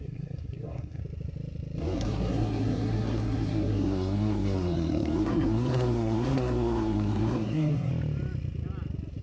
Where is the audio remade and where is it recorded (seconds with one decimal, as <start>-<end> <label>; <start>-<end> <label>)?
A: 0.0-1.0 remade; 1.0-1.8 recorded; 1.8-7.9 remade; 7.9-9.2 recorded